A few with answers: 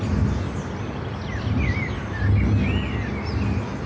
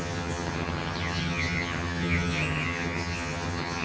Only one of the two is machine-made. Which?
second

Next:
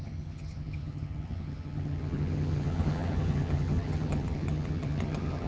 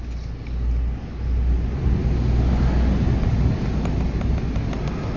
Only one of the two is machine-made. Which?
first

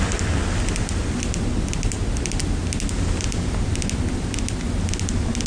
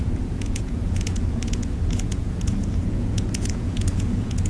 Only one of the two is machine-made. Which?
second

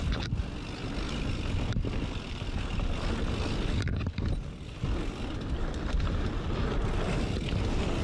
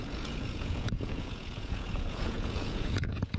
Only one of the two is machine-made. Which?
second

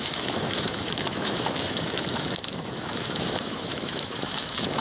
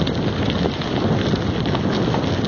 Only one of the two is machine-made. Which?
first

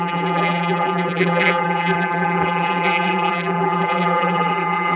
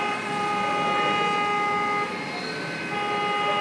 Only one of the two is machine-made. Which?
first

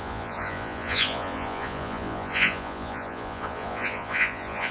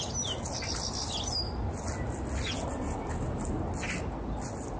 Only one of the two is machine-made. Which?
first